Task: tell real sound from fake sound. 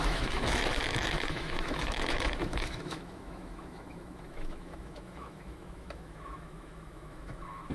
fake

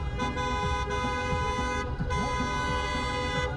real